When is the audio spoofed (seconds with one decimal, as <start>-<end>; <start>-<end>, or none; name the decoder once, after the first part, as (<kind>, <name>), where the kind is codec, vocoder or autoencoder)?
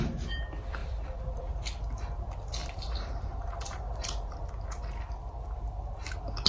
2.6-4.4 (vocoder, BigVGAN v2)